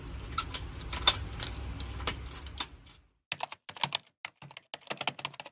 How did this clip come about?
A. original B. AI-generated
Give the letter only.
A